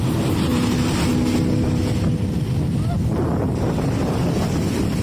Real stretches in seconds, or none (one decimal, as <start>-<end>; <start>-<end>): 0.0-5.0